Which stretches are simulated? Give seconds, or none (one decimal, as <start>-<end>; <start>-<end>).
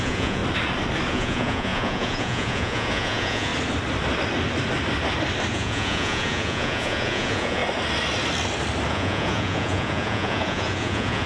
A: 0.0-0.4; 1.1-3.5; 5.5-7.6; 8.9-11.3